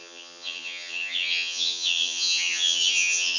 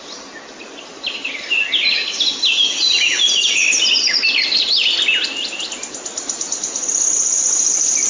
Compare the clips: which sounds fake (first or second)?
first